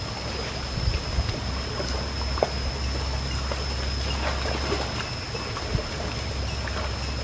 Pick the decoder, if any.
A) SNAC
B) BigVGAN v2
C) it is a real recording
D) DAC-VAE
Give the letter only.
C